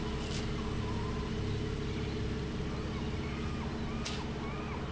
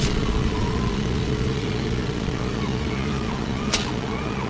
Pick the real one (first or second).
first